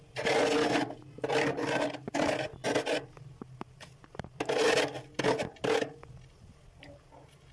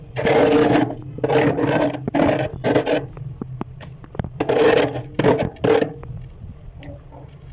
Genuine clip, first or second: first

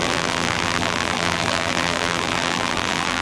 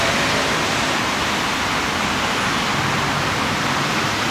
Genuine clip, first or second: second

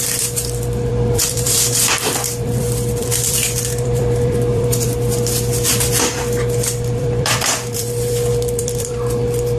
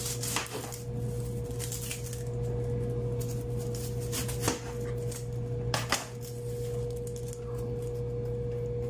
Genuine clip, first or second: second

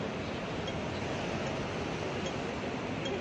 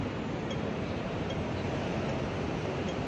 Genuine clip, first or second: first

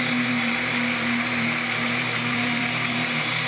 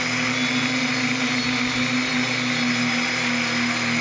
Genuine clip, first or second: second